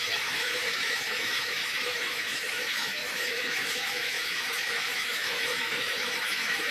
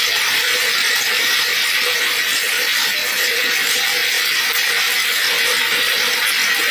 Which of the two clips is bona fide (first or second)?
second